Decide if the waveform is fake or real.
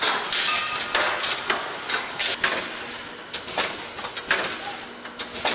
real